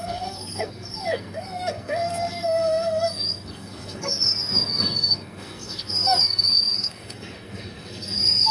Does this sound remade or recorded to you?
remade